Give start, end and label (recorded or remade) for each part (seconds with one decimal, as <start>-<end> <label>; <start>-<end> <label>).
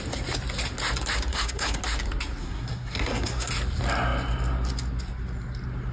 0.0-1.3 recorded; 1.3-1.8 remade; 1.8-2.4 recorded; 2.4-3.5 remade; 3.5-5.9 recorded